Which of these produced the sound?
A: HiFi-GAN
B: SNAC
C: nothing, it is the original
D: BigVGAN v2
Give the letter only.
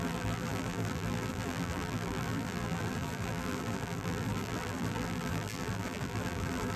D